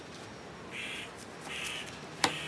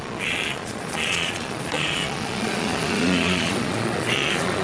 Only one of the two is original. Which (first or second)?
first